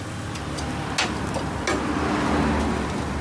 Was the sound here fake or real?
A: real